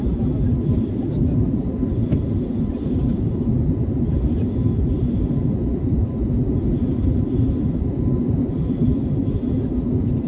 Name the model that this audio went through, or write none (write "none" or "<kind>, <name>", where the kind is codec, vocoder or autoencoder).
none